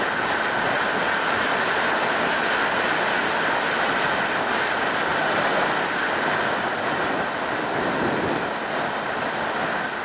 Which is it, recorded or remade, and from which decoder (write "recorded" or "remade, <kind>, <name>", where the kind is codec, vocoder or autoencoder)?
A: recorded